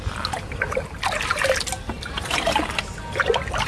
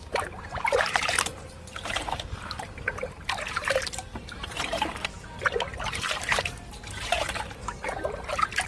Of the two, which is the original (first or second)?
first